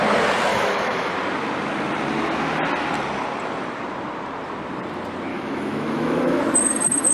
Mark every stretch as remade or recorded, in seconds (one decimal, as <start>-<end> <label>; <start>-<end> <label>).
0.0-0.5 recorded; 0.5-1.1 remade; 1.1-5.3 recorded; 5.3-6.4 remade; 6.4-7.1 recorded